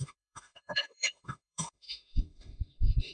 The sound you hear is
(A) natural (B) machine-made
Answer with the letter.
B